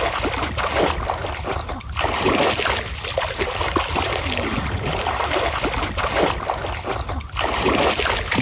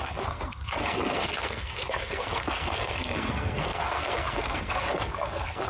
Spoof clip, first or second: second